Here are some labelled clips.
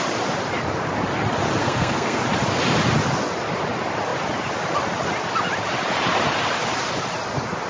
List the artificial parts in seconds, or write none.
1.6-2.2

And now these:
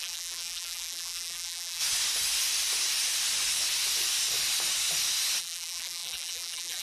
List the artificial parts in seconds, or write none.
0.0-1.8; 5.4-6.8